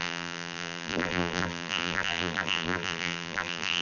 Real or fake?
fake